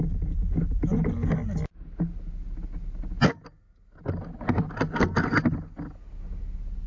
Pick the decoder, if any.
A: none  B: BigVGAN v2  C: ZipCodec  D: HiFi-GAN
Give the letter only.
A